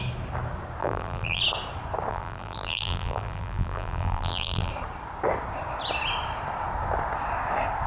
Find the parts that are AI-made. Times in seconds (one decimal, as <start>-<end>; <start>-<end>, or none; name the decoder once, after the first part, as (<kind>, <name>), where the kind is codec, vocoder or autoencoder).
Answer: 0.8-1.4 (vocoder, BigVGAN v2); 2.1-4.7